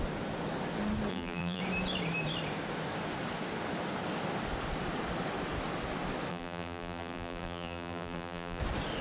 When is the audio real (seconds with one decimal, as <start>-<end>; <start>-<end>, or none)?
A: 0.0-1.1; 1.6-6.3; 8.6-9.0